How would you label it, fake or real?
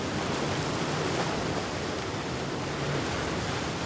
real